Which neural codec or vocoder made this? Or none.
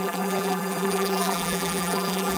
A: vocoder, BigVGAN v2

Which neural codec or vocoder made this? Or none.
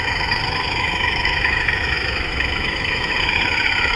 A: autoencoder, DAC-VAE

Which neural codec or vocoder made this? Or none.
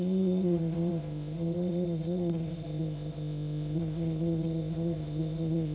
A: codec, ZipCodec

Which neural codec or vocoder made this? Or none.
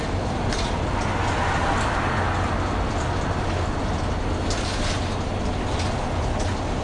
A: none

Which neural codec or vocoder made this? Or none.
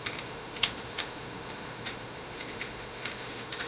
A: autoencoder, DAC-VAE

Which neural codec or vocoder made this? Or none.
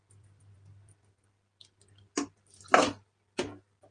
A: none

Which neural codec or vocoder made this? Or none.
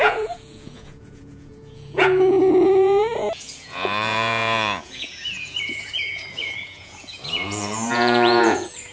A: vocoder, Vocos